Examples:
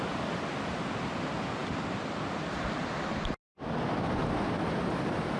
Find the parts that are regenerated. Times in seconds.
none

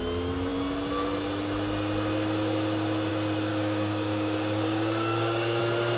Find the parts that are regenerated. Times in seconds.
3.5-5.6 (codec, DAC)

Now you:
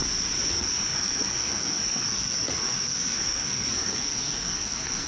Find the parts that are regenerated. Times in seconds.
0.5-5.1 (codec, SNAC)

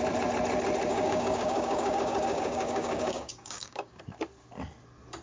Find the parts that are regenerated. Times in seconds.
0.9-4.0 (codec, DAC)